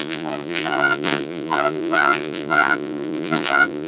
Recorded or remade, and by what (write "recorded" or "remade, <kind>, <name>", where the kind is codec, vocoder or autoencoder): remade, vocoder, Vocos